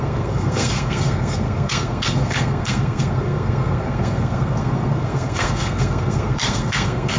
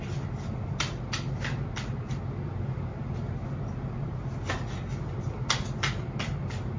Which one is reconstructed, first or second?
first